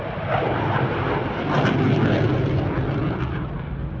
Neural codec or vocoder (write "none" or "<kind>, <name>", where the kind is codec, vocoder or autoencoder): none